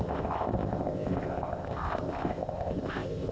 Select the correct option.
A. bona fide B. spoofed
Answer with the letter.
B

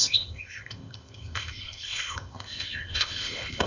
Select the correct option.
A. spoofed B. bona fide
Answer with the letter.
A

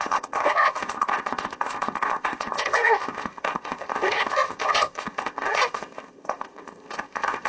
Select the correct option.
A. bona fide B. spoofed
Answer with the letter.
B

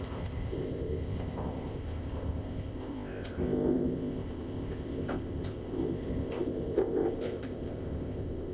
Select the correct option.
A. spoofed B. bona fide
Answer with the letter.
A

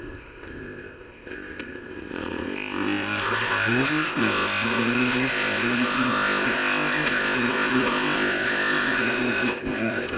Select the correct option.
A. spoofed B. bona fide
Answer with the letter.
A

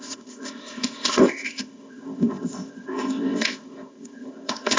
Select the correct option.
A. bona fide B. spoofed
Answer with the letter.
B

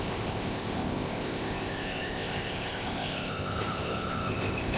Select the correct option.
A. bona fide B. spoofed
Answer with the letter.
B